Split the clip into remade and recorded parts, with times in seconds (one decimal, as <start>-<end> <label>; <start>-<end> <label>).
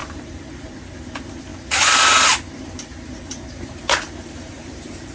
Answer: 0.0-1.0 remade; 1.0-5.1 recorded